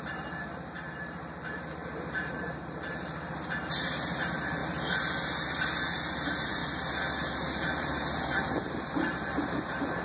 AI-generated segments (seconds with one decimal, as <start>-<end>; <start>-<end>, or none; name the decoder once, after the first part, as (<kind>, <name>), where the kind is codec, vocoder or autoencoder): 0.0-4.6 (vocoder, BigVGAN v2); 5.8-6.6; 7.2-10.0